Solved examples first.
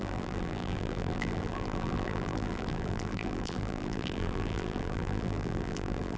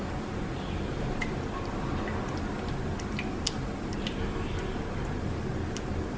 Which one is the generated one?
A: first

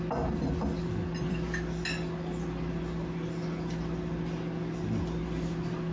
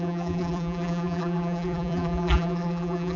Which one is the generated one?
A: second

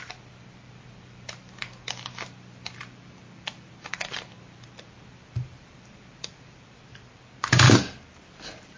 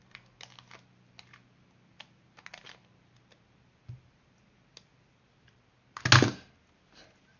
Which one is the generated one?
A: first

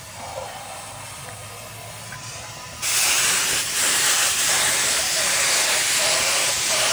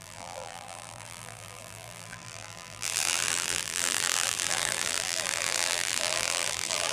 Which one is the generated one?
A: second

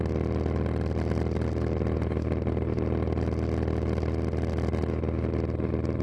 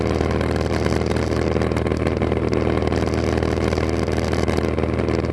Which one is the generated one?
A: second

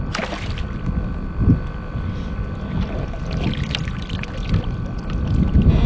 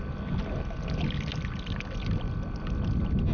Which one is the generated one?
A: first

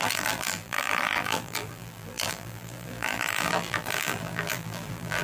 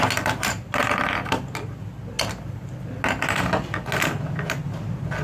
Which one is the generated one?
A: first